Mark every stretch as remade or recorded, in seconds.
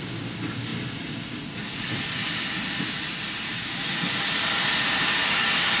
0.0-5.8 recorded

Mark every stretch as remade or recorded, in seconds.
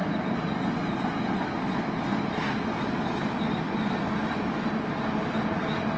0.0-6.0 recorded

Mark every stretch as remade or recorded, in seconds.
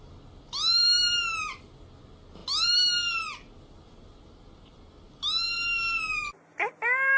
0.0-7.2 recorded